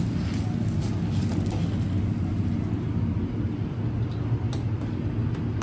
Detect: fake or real real